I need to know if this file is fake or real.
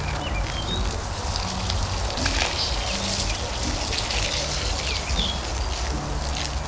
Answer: real